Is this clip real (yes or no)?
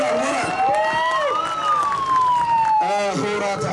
yes